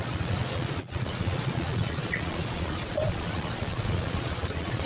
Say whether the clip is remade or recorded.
remade